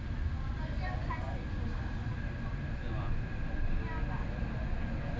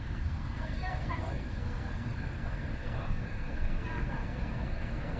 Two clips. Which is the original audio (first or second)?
first